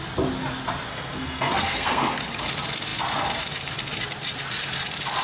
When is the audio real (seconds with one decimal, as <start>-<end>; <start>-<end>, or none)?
0.0-0.9; 2.2-5.2